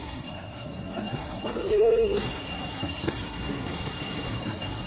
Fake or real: fake